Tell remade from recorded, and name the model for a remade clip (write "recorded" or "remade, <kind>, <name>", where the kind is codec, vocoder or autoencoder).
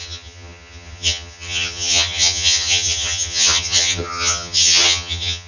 remade, vocoder, HiFi-GAN